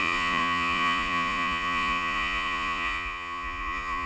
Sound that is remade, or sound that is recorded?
remade